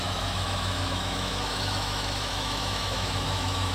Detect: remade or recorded remade